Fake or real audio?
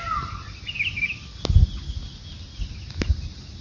real